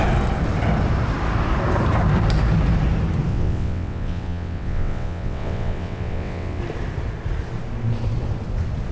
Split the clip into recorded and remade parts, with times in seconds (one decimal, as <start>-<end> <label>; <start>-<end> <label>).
0.0-3.3 recorded; 3.3-6.6 remade; 6.6-8.9 recorded